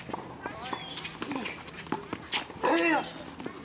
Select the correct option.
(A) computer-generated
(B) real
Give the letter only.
B